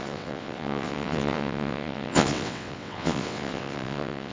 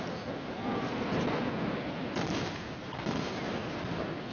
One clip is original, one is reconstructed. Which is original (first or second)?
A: second